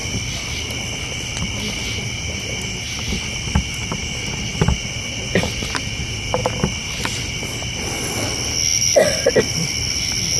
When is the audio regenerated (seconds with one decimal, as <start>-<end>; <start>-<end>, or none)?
8.7-10.4